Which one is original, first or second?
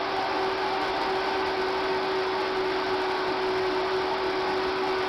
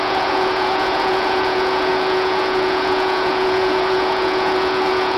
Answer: first